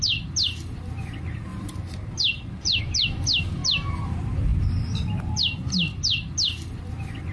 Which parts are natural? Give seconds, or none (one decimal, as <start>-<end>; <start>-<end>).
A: 0.0-1.5; 2.8-7.3